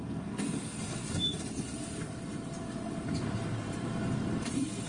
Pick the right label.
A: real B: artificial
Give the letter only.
A